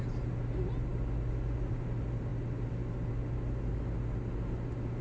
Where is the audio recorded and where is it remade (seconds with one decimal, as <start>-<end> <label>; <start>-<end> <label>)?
0.0-5.0 recorded